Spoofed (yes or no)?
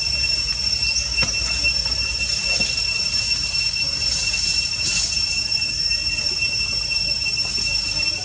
no